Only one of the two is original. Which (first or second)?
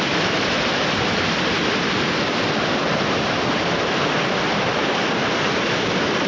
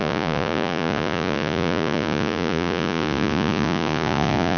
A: first